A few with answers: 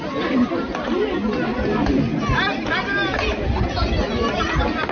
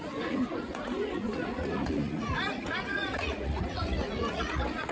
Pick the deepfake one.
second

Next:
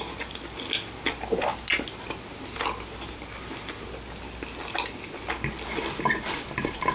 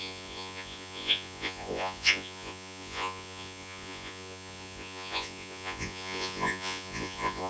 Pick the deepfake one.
second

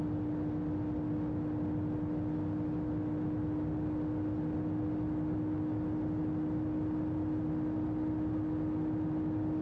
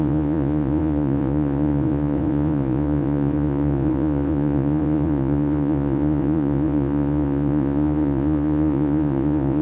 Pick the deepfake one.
second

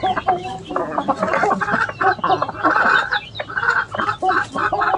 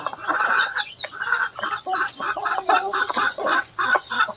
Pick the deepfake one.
second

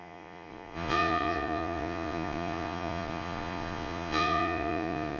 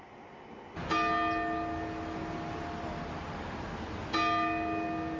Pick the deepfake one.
first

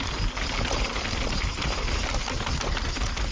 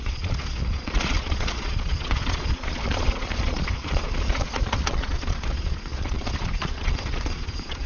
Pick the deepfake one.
second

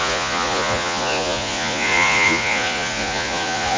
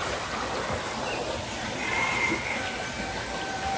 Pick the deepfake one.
first